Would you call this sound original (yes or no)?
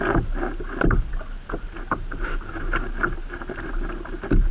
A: yes